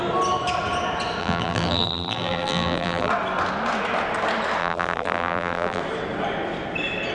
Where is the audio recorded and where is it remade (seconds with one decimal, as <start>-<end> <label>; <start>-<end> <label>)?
0.0-1.2 recorded; 1.2-3.1 remade; 3.1-4.6 recorded; 4.6-5.8 remade; 5.8-7.1 recorded